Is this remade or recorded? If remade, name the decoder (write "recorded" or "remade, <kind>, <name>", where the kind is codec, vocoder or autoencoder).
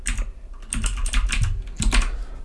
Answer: recorded